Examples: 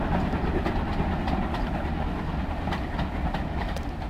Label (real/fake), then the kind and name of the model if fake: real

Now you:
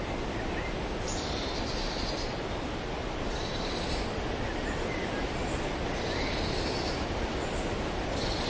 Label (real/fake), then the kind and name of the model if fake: real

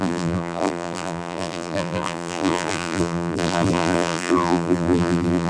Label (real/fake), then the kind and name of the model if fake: fake, vocoder, BigVGAN v2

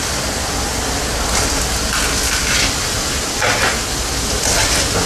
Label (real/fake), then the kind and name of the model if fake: real